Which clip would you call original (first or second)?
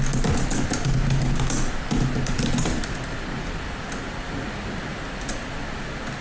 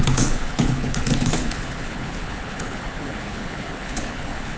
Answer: first